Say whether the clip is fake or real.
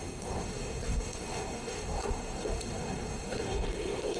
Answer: fake